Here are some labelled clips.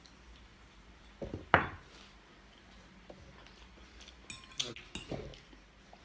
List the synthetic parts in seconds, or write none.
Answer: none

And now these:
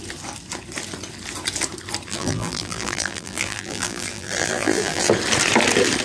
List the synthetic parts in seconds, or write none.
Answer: 2.1-5.1 (vocoder, BigVGAN v2)